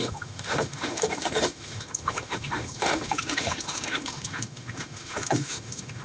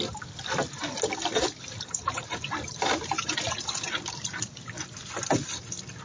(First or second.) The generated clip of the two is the first